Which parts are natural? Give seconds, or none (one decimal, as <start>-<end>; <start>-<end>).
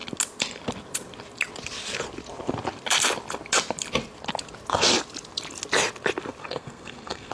0.0-6.4